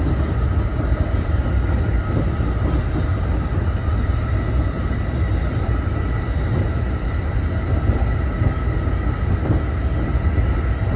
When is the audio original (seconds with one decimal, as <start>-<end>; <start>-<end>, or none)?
0.0-11.0